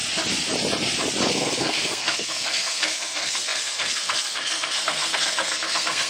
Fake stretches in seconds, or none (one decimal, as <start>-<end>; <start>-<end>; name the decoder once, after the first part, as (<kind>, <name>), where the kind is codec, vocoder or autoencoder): 1.3-6.1 (codec, SNAC)